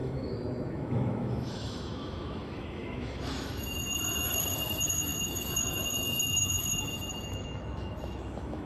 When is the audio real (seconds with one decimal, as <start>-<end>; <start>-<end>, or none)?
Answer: none